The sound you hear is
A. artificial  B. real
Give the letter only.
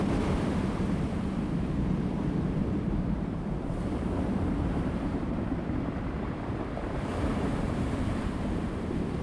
A